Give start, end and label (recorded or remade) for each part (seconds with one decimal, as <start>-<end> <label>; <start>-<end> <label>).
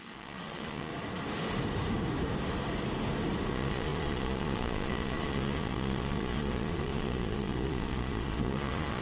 0.0-0.9 remade; 0.9-3.5 recorded; 3.5-9.0 remade